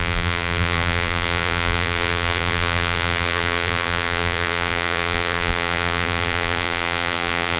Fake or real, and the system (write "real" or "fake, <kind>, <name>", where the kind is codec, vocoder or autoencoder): fake, vocoder, BigVGAN v2